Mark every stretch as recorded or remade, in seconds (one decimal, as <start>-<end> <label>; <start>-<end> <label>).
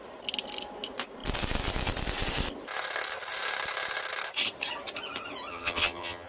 0.0-5.5 recorded; 5.5-6.3 remade